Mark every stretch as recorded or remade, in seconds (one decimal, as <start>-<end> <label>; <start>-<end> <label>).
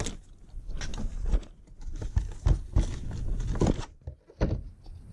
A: 0.0-5.1 recorded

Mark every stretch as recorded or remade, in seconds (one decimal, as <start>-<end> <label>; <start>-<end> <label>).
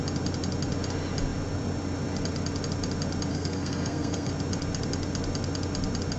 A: 0.0-3.3 recorded; 3.3-4.3 remade; 4.3-6.2 recorded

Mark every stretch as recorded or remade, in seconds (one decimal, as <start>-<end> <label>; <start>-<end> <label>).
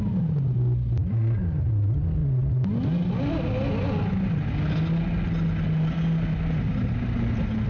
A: 0.0-7.7 recorded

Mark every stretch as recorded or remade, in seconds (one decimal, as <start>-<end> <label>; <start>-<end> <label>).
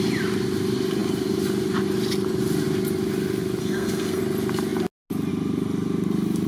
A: 0.0-3.6 recorded; 3.6-4.2 remade; 4.2-6.5 recorded